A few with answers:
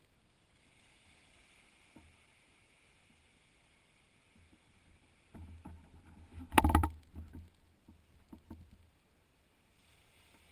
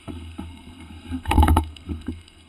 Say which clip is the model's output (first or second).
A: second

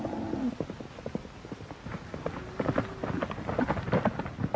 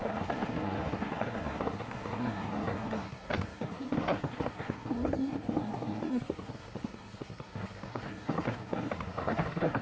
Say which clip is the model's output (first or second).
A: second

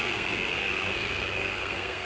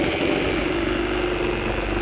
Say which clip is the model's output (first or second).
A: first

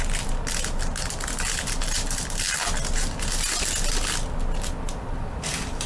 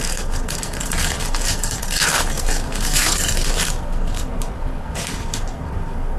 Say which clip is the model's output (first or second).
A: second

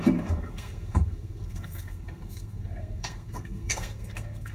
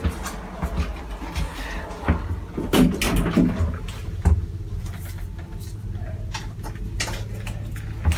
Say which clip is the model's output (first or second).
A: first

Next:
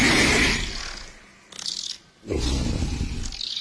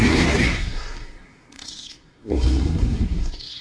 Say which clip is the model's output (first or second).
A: second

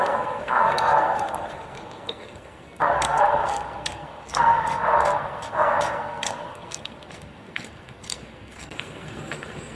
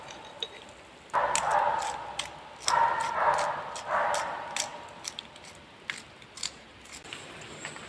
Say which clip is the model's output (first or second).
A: first